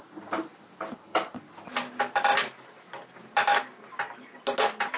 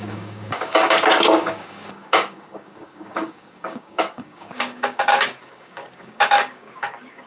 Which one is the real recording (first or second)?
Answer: first